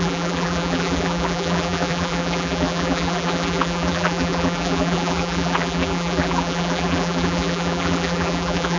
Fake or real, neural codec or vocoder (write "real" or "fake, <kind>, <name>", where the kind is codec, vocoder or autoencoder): fake, vocoder, BigVGAN v2